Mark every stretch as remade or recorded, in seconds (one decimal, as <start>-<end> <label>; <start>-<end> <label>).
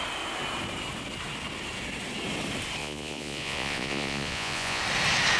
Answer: 0.0-2.8 recorded; 2.8-4.8 remade; 4.8-5.4 recorded